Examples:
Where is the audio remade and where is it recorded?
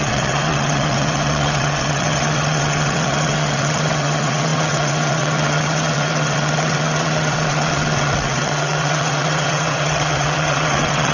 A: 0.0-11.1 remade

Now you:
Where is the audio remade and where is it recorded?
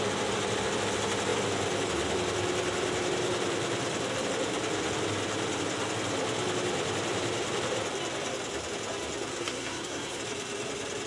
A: 0.0-9.3 recorded; 9.3-10.2 remade; 10.2-11.1 recorded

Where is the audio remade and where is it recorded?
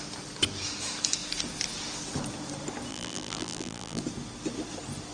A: 0.0-2.9 recorded; 2.9-4.0 remade; 4.0-5.1 recorded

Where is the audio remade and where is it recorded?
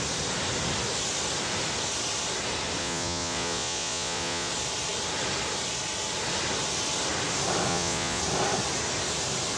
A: 0.0-2.8 recorded; 2.8-4.5 remade; 4.5-7.7 recorded; 7.7-8.2 remade; 8.2-9.6 recorded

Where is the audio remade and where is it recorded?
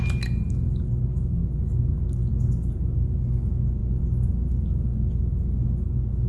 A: 0.0-6.3 recorded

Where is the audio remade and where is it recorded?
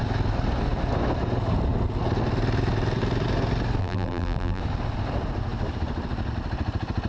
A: 0.0-3.8 recorded; 3.8-4.6 remade; 4.6-7.1 recorded